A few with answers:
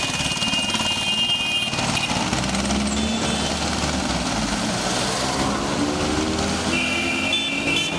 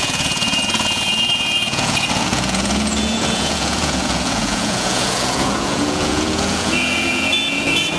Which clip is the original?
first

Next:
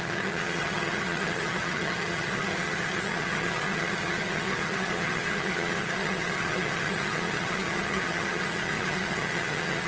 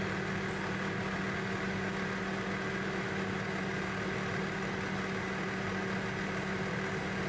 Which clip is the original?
second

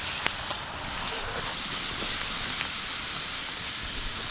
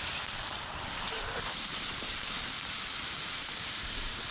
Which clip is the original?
first